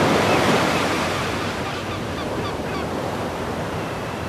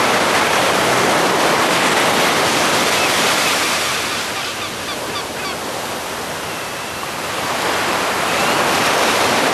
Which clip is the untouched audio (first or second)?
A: second